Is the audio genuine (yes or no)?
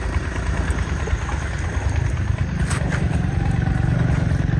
yes